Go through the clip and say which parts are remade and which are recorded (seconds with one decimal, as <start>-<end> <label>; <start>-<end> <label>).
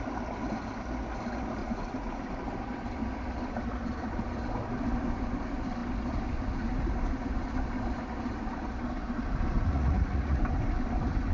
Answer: 0.0-1.6 recorded; 1.6-2.2 remade; 2.2-9.7 recorded; 9.7-10.4 remade; 10.4-11.3 recorded